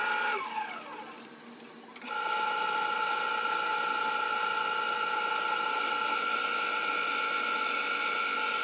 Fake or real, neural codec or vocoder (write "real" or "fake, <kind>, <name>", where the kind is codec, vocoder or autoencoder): real